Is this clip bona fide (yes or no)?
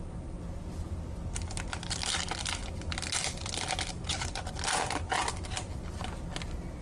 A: yes